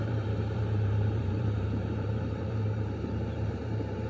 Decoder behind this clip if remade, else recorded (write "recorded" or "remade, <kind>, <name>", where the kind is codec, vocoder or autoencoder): remade, vocoder, BigVGAN v2